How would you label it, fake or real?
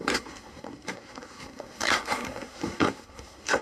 fake